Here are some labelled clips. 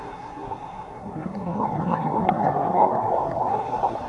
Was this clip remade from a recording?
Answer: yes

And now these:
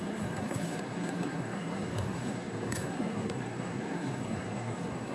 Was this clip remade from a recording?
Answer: yes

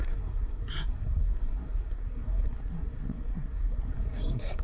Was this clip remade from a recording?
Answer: yes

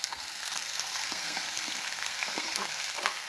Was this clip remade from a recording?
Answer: yes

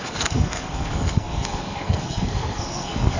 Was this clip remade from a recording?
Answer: yes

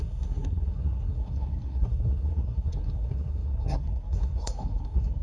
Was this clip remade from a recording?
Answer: yes